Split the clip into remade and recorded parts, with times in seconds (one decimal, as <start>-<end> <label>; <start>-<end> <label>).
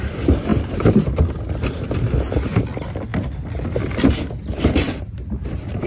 0.0-5.9 recorded